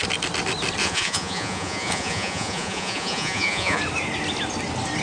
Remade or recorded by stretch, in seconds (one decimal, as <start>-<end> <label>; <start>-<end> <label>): 0.0-0.8 recorded; 0.8-3.8 remade; 3.8-5.0 recorded